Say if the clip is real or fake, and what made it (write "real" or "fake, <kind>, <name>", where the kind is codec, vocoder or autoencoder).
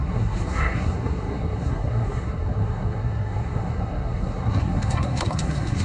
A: fake, codec, SNAC